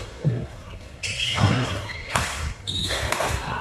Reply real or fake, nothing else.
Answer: fake